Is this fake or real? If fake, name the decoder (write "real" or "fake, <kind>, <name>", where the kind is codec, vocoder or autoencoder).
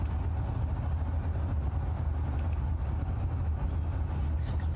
real